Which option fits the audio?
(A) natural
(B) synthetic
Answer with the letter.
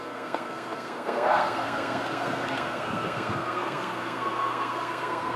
B